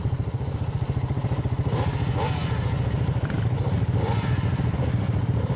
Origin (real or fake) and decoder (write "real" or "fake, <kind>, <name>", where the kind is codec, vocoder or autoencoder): fake, vocoder, BigVGAN v2